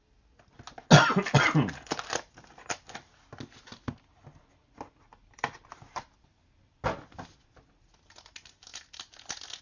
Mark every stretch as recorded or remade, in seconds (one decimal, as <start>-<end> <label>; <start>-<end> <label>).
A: 0.0-5.1 recorded; 5.1-6.3 remade; 6.3-9.6 recorded